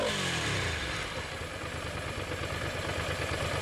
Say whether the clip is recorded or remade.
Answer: recorded